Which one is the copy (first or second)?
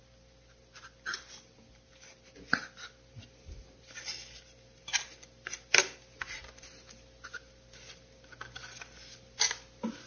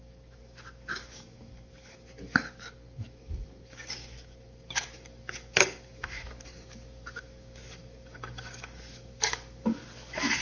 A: second